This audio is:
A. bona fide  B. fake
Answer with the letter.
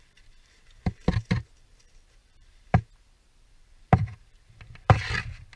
B